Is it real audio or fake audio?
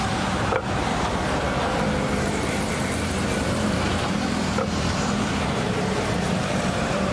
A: fake